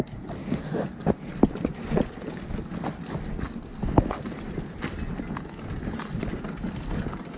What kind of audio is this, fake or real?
real